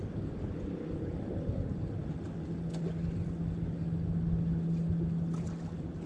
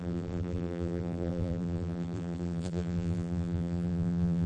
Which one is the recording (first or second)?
first